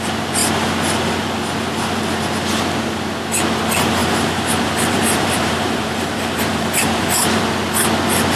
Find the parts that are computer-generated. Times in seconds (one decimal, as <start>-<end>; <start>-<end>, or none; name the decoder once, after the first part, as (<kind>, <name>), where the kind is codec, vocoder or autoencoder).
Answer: 4.0-7.4 (vocoder, BigVGAN v2)

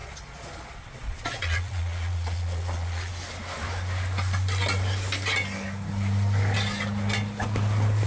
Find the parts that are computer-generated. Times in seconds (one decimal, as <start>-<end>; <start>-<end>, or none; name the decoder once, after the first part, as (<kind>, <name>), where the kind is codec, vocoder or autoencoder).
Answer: 0.0-3.1 (vocoder, Vocos)

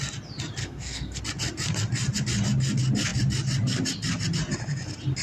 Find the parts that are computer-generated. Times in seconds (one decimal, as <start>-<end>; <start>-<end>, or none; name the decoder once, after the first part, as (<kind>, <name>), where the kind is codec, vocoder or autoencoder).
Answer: 0.6-1.2 (codec, SNAC)

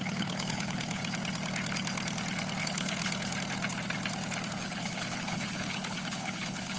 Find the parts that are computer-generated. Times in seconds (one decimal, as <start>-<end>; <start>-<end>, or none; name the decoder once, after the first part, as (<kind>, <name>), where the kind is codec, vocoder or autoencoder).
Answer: 0.0-1.0 (codec, HILCodec); 2.6-3.0; 4.5-6.8

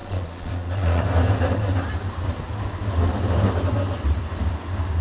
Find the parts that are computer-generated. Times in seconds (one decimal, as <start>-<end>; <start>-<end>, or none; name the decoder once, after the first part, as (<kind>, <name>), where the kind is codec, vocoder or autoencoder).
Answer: 0.0-1.0 (vocoder, Vocos)

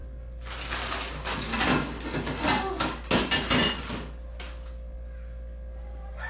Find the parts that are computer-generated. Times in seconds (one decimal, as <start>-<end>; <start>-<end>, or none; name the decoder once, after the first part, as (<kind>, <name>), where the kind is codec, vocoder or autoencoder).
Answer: none